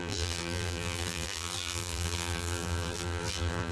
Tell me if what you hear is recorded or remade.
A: remade